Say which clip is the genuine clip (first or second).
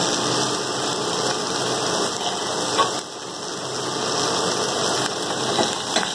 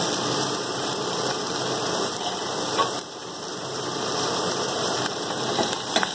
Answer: first